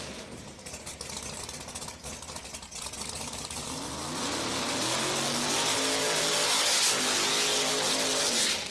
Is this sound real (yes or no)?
yes